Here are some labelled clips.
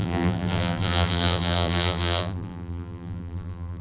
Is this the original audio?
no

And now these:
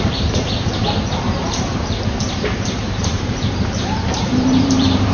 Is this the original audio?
no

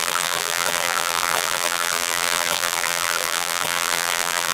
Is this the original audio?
no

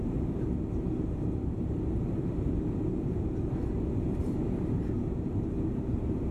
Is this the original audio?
no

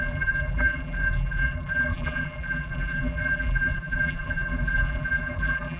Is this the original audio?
no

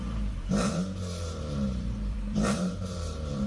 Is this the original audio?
no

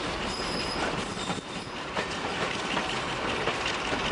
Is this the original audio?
no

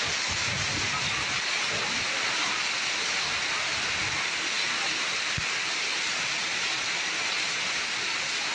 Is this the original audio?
yes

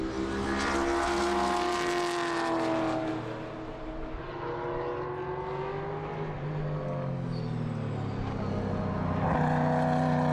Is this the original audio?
yes